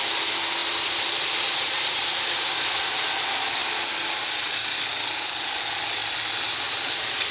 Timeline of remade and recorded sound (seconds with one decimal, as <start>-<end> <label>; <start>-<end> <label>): 0.0-7.3 recorded